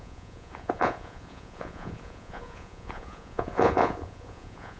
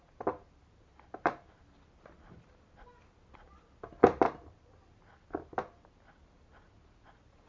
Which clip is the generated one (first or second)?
first